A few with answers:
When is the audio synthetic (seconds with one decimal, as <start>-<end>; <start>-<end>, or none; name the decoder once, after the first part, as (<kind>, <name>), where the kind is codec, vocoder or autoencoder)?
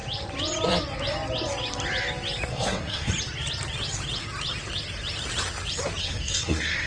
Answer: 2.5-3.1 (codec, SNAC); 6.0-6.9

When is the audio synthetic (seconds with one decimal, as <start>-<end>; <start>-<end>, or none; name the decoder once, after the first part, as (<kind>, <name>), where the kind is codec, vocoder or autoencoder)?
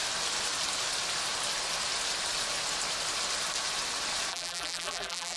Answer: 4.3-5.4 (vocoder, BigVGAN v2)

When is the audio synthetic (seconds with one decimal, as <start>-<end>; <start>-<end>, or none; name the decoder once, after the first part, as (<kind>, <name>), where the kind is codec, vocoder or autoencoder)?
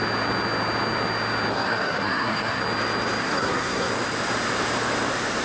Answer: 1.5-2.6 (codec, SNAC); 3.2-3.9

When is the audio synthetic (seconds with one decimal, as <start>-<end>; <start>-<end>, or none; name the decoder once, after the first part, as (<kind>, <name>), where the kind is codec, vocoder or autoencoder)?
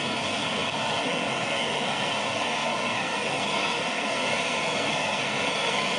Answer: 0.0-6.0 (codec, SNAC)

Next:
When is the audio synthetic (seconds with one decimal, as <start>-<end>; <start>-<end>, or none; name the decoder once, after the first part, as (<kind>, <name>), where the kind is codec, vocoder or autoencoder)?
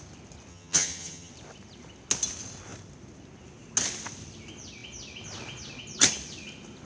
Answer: 0.5-1.3 (vocoder, HiFi-GAN)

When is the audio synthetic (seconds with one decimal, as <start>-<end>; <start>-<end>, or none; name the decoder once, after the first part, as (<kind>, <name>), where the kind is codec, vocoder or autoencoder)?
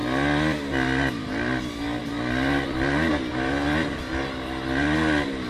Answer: none